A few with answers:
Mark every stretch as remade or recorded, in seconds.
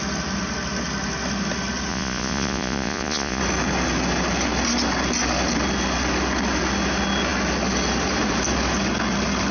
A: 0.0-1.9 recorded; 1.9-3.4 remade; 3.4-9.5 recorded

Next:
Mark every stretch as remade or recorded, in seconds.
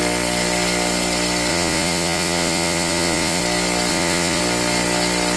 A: 0.0-1.5 recorded; 1.5-3.4 remade; 3.4-3.9 recorded; 3.9-4.4 remade; 4.4-5.4 recorded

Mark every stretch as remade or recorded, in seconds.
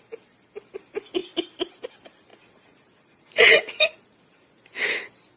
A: 0.0-2.3 recorded; 2.3-4.6 remade; 4.6-5.4 recorded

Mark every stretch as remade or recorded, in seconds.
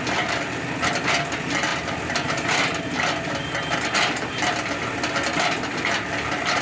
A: 0.0-6.6 recorded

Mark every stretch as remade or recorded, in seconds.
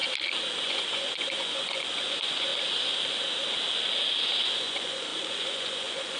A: 0.0-0.6 recorded; 0.6-2.5 remade; 2.5-4.4 recorded; 4.4-6.2 remade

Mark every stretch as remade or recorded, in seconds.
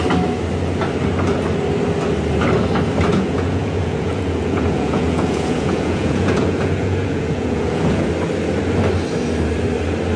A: 0.0-3.1 recorded; 3.1-8.1 remade; 8.1-10.2 recorded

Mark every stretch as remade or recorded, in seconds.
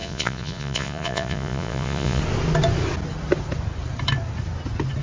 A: 0.0-2.2 remade; 2.2-5.0 recorded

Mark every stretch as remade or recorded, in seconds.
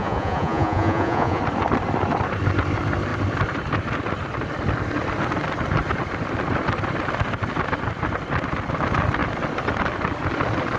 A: 0.0-1.4 remade; 1.4-10.8 recorded